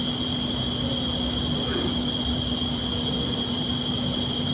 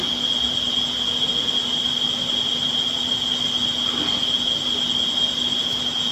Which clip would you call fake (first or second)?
first